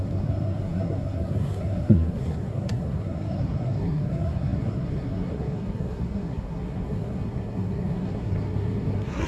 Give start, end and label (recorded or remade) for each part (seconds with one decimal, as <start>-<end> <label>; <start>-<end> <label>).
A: 0.0-9.3 remade